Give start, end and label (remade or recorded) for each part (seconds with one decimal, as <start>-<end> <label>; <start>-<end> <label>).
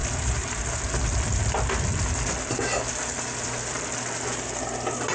0.0-5.1 recorded